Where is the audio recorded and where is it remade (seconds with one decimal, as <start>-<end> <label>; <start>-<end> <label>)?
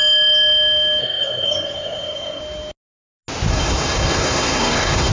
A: 0.0-1.0 recorded; 1.0-2.4 remade; 2.4-3.5 recorded; 3.5-5.1 remade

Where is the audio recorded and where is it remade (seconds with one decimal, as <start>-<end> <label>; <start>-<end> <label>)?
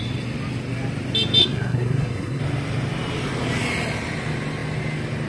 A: 0.0-1.4 recorded; 1.4-2.4 remade; 2.4-5.3 recorded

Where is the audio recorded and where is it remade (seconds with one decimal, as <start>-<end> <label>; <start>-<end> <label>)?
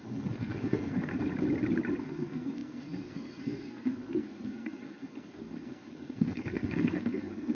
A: 0.0-1.1 remade; 1.1-2.0 recorded; 2.0-7.5 remade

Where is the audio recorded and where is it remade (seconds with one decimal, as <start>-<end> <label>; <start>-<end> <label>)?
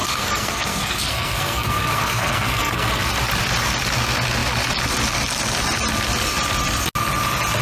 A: 0.0-3.0 remade; 3.0-7.6 recorded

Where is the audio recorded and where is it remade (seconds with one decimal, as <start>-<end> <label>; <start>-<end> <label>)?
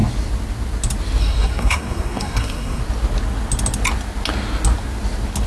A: 0.0-1.2 recorded; 1.2-2.8 remade; 2.8-5.5 recorded